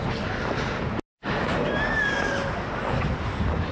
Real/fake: real